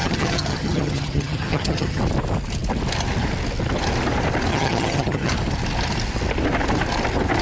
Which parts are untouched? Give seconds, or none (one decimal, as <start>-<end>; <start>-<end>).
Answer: 2.0-4.5; 5.3-7.4